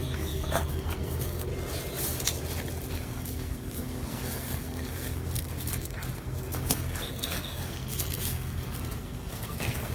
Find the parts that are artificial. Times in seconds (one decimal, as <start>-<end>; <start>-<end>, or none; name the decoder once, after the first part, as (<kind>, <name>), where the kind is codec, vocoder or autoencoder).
0.0-1.5 (codec, SNAC); 2.9-9.9